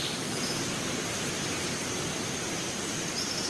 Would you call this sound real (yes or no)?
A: yes